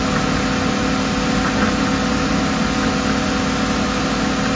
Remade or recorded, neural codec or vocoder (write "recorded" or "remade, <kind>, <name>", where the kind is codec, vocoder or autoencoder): recorded